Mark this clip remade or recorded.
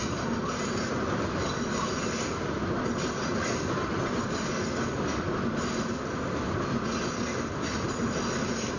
recorded